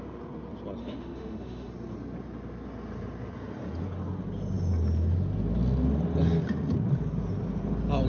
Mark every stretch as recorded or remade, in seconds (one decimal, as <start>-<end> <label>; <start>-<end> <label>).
0.0-0.8 recorded; 0.8-1.7 remade; 1.7-8.1 recorded